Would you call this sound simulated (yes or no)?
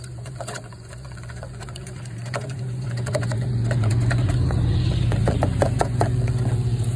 yes